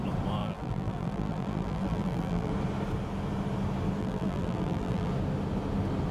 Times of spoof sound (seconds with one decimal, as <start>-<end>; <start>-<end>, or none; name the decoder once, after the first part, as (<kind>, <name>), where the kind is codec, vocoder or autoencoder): 0.4-2.5 (vocoder, BigVGAN v2); 4.0-5.1